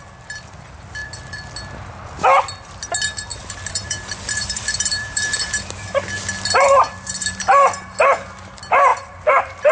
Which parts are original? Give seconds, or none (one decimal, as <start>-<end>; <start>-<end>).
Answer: 0.0-3.3; 5.6-8.9